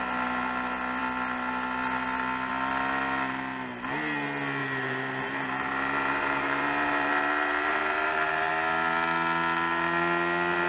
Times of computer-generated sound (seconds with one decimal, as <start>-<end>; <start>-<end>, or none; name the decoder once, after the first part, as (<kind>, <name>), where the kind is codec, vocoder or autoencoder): 4.6-8.5 (vocoder, BigVGAN v2)